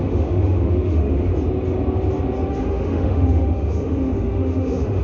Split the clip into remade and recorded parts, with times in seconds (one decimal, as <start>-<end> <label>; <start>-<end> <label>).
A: 0.0-1.3 remade; 1.3-2.5 recorded; 2.5-5.0 remade